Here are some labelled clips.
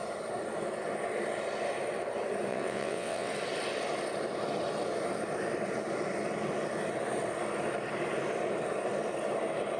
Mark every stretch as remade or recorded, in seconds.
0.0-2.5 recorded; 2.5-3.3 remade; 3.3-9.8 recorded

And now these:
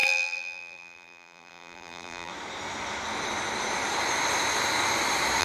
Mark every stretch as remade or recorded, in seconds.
0.0-2.3 remade; 2.3-5.4 recorded

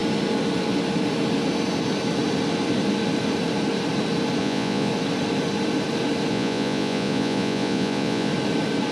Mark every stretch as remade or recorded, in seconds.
0.0-4.4 recorded; 4.4-4.9 remade; 4.9-6.3 recorded; 6.3-8.3 remade; 8.3-8.9 recorded

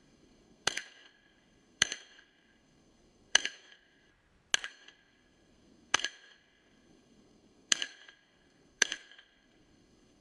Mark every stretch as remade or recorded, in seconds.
0.0-4.1 remade; 4.1-4.7 recorded; 4.7-10.2 remade

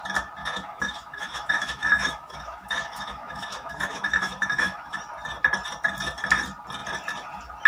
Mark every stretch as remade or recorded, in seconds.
0.0-0.4 recorded; 0.4-5.0 remade; 5.0-7.7 recorded

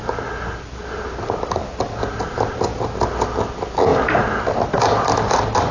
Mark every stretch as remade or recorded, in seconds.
0.0-5.7 recorded

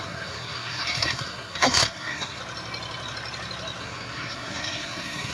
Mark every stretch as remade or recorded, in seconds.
0.0-2.4 remade; 2.4-3.8 recorded; 3.8-5.3 remade